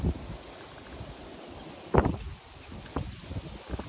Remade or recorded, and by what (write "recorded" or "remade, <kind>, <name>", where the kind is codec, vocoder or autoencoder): recorded